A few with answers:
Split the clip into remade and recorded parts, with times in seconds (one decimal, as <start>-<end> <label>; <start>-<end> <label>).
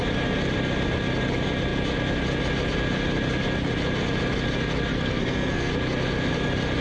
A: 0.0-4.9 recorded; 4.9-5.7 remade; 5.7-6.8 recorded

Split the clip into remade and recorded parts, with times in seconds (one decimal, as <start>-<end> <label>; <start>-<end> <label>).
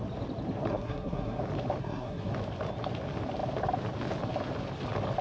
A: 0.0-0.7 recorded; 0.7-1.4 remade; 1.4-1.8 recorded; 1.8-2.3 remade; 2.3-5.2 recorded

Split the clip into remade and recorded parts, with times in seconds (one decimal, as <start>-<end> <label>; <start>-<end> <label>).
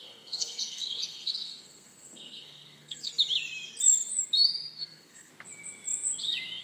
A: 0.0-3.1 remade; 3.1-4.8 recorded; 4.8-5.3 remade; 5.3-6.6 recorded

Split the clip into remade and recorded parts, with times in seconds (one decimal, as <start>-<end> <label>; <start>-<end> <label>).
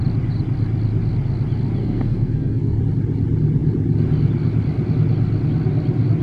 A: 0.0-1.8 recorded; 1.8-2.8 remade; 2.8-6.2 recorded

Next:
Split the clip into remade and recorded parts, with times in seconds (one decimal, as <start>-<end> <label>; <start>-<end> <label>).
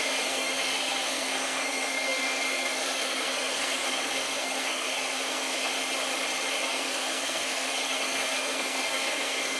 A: 0.0-5.7 remade; 5.7-6.5 recorded; 6.5-9.6 remade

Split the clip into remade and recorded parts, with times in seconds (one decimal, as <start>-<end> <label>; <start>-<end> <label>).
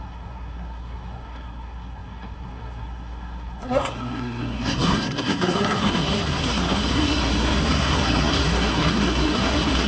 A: 0.0-9.9 remade